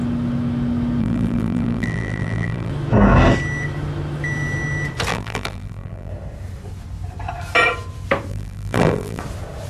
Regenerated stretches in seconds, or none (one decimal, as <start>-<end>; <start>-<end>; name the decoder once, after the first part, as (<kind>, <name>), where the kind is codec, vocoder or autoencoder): 1.0-2.7 (vocoder, BigVGAN v2); 5.1-6.1; 8.3-9.2